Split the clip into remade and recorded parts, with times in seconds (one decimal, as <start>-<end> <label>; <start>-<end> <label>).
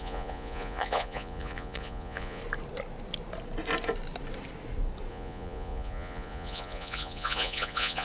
0.0-2.4 remade; 2.4-5.1 recorded; 5.1-8.0 remade